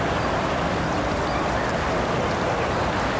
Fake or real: real